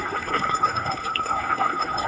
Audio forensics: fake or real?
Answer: fake